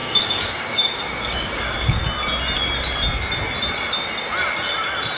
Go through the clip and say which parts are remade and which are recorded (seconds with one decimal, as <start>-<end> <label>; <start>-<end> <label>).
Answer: 0.0-2.0 remade; 2.0-5.2 recorded